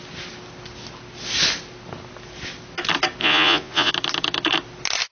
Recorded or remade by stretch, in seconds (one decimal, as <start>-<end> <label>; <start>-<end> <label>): 0.0-3.2 recorded; 3.2-3.9 remade; 3.9-5.1 recorded